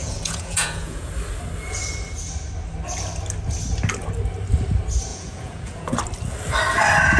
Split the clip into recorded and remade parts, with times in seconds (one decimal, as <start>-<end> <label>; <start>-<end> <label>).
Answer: 0.0-1.1 remade; 1.1-5.1 recorded; 5.1-6.0 remade; 6.0-7.2 recorded